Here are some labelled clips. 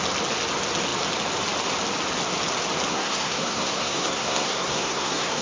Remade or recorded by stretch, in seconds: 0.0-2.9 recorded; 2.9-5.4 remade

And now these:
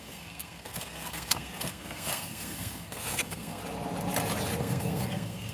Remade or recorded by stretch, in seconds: 0.0-3.6 remade; 3.6-4.6 recorded; 4.6-5.5 remade

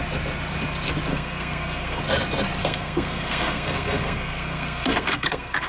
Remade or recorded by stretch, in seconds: 0.0-1.1 recorded; 1.1-2.0 remade; 2.0-2.6 recorded; 2.6-5.7 remade

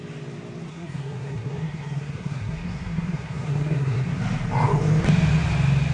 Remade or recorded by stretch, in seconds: 0.0-0.7 recorded; 0.7-4.2 remade; 4.2-5.9 recorded

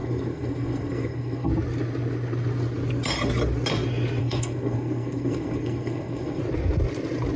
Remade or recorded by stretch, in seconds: 0.0-1.5 remade; 1.5-4.2 recorded; 4.2-6.4 remade; 6.4-7.4 recorded

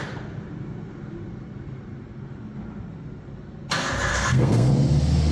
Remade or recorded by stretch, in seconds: 0.0-4.1 recorded; 4.1-4.7 remade; 4.7-5.3 recorded

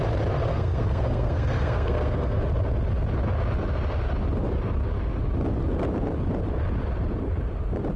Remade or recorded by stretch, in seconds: 0.0-0.5 recorded; 0.5-2.4 remade; 2.4-8.0 recorded